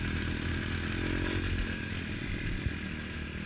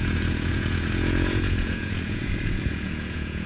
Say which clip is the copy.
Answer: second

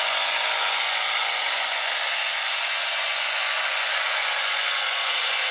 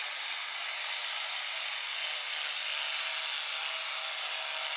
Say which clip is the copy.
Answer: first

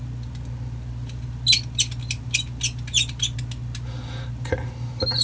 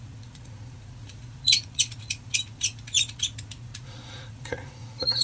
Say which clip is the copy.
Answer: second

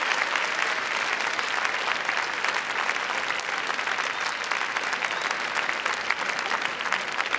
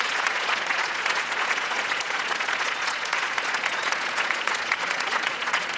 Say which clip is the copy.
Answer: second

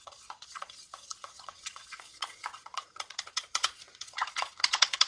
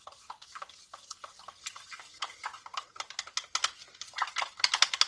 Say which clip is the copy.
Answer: first